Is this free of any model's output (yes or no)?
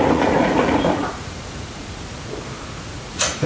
no